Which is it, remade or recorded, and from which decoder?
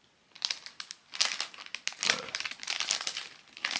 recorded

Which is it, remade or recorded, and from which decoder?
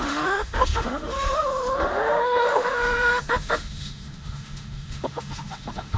remade, autoencoder, DAC-VAE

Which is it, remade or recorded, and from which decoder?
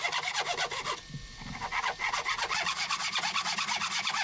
recorded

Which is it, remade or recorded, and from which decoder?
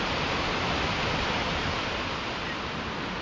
recorded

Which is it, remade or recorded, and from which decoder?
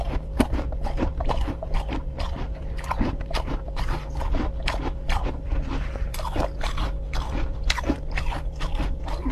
remade, vocoder, BigVGAN v2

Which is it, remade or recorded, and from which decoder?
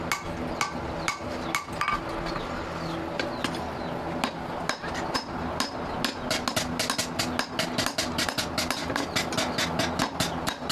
recorded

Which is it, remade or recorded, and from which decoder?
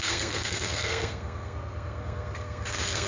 remade, codec, SNAC